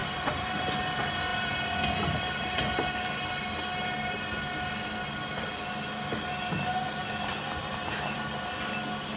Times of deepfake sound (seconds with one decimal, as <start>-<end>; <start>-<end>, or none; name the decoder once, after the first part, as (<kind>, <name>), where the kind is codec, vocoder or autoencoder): 0.0-0.6 (vocoder, BigVGAN v2); 7.0-8.2